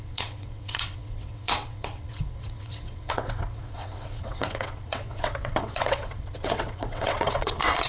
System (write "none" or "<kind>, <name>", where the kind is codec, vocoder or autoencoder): vocoder, WaveNeXt